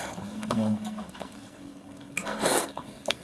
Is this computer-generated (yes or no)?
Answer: yes